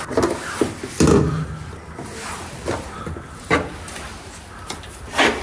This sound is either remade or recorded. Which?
recorded